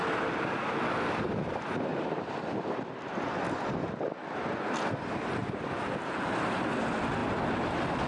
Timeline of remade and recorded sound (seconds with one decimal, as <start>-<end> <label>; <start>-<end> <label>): 0.0-8.1 recorded